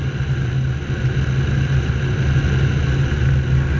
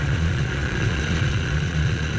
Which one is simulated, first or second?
second